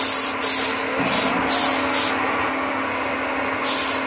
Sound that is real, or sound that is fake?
real